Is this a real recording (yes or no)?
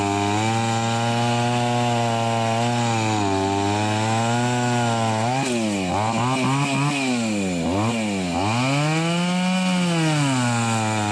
yes